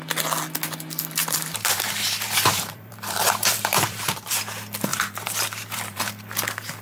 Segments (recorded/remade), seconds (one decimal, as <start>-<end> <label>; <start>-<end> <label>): 0.0-1.2 recorded; 1.2-4.4 remade; 4.4-4.9 recorded; 4.9-6.1 remade; 6.1-6.8 recorded